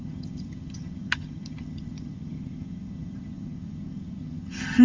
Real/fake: fake